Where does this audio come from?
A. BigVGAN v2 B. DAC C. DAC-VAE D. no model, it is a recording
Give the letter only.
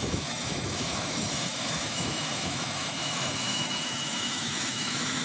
C